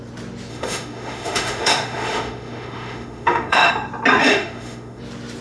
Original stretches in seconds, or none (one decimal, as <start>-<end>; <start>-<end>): 0.0-0.5; 3.7-4.2; 5.0-5.4